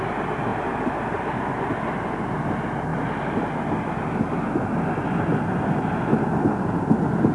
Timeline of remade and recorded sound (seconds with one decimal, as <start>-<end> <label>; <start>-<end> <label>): 0.0-7.3 recorded

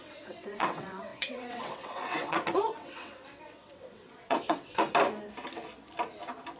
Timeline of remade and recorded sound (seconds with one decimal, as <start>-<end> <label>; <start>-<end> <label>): 0.0-4.8 remade; 4.8-6.6 recorded

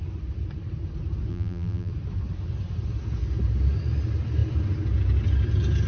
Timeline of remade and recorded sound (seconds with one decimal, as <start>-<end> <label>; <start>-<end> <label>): 0.0-1.3 recorded; 1.3-1.9 remade; 1.9-5.9 recorded